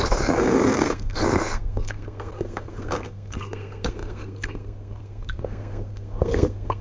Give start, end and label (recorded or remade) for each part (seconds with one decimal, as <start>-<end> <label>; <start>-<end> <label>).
0.0-6.8 remade